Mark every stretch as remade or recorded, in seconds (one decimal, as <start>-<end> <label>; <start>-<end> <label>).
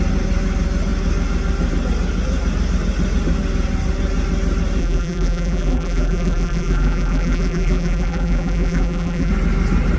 0.0-4.8 recorded; 4.8-9.3 remade; 9.3-10.0 recorded